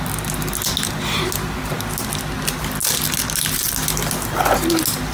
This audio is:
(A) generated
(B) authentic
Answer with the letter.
B